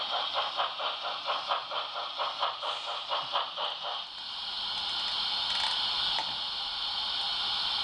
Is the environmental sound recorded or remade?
recorded